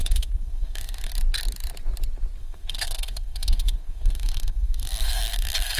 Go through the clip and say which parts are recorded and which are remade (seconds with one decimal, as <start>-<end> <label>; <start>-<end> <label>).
0.0-1.1 remade; 1.1-2.4 recorded; 2.4-5.8 remade